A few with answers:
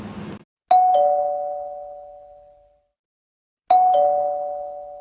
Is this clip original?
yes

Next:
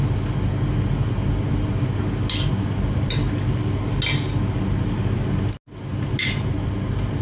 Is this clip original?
yes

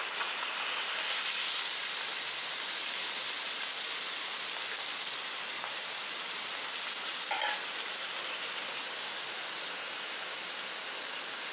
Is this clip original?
yes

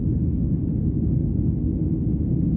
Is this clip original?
yes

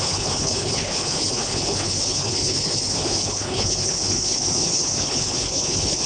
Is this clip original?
no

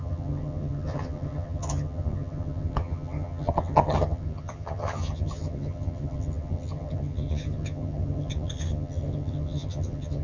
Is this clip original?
no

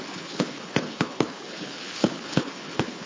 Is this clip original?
no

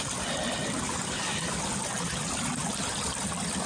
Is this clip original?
yes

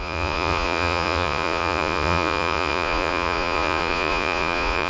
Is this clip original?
no